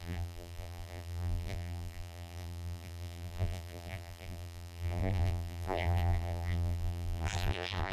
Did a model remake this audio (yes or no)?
yes